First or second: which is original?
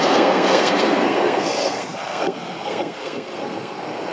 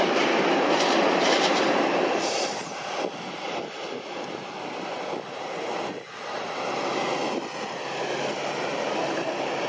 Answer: second